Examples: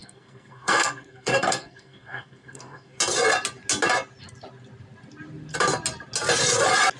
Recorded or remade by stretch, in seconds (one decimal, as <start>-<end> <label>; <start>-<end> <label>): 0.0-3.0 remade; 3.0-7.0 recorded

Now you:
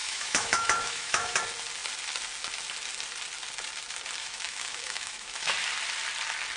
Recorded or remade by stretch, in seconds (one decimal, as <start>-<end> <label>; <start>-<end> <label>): 0.0-1.4 remade; 1.4-4.2 recorded; 4.2-5.5 remade; 5.5-6.6 recorded

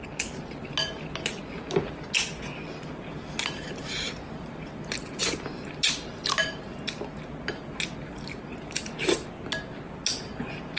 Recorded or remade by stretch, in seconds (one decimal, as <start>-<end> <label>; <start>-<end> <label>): 0.0-10.8 recorded

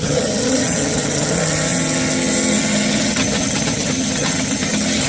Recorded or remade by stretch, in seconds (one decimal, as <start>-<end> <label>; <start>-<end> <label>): 0.0-5.1 remade

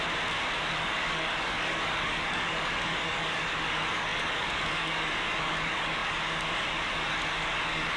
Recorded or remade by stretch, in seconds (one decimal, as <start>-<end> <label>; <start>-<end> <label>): 0.0-0.6 recorded; 0.6-8.0 remade

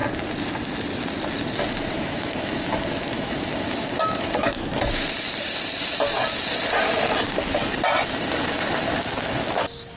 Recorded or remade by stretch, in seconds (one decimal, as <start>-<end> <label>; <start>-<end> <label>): 0.0-1.9 recorded; 1.9-4.7 remade; 4.7-9.2 recorded; 9.2-10.0 remade